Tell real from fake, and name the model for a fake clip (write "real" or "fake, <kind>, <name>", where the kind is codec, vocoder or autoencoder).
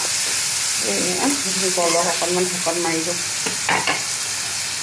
real